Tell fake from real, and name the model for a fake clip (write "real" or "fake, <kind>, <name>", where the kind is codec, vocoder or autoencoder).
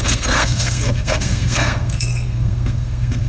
fake, codec, SNAC